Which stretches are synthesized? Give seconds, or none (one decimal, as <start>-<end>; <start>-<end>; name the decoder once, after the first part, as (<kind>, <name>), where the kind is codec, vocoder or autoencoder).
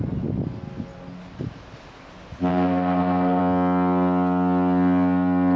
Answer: 2.5-3.4 (codec, SNAC)